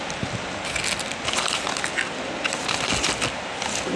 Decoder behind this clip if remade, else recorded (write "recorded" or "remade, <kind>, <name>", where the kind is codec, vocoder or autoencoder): recorded